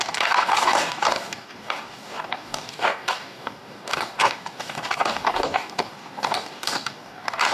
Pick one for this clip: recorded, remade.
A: remade